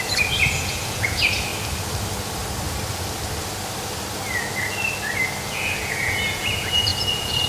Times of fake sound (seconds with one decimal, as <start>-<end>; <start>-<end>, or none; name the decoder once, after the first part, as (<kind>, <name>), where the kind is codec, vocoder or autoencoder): 0.0-1.5 (vocoder, Vocos); 5.5-7.5